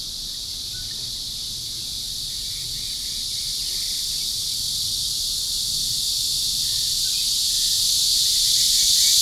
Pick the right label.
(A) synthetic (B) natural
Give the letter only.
B